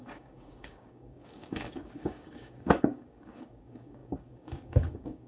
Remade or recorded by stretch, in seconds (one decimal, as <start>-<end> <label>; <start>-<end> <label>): 0.0-5.3 remade